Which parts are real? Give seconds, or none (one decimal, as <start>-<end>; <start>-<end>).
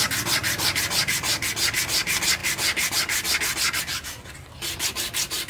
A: 0.0-5.5